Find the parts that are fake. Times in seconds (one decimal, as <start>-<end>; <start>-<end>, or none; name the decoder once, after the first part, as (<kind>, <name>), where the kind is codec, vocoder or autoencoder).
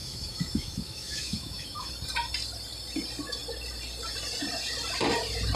0.0-1.9 (autoencoder, DAC-VAE)